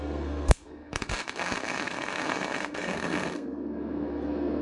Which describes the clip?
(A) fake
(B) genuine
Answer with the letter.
A